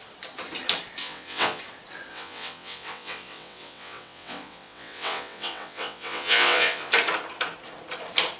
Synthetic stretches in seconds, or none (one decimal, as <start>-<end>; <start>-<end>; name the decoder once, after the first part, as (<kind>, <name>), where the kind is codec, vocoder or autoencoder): 1.0-1.6 (vocoder, WaveNeXt); 2.1-6.9